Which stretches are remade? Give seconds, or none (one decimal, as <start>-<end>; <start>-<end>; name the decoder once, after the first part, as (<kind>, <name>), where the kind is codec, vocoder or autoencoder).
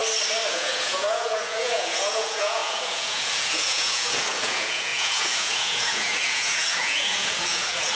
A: 0.5-7.9 (vocoder, Vocos)